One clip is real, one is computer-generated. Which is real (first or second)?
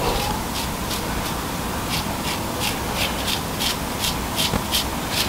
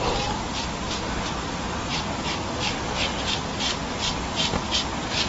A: first